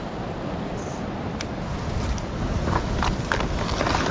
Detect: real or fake real